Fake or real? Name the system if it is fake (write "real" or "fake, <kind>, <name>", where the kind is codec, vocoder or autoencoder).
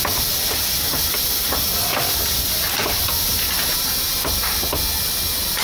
real